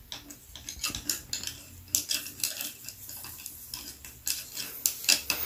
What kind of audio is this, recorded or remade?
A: recorded